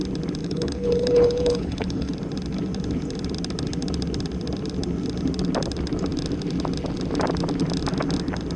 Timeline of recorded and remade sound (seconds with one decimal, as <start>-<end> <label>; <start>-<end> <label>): 0.0-0.4 recorded; 0.4-2.1 remade; 2.1-8.6 recorded